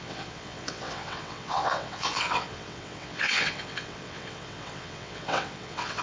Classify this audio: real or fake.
fake